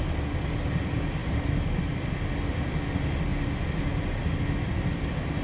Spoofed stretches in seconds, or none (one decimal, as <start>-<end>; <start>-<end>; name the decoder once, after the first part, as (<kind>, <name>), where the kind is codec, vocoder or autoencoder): none